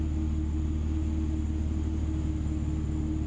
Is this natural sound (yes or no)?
yes